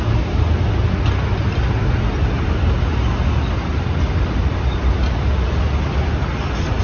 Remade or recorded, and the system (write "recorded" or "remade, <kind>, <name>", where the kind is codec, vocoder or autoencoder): recorded